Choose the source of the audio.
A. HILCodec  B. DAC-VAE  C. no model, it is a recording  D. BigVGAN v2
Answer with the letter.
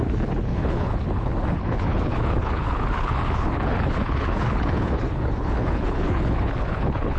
A